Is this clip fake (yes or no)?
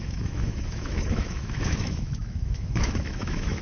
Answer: yes